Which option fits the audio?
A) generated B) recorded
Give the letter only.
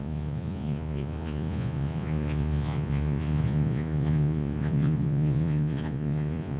A